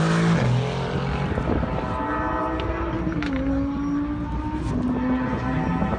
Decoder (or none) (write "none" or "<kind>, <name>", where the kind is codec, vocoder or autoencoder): none